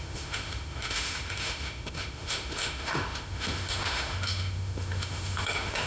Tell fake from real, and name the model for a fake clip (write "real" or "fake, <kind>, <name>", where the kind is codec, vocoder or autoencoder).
fake, autoencoder, DAC-VAE